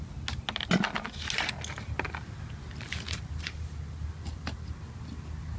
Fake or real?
real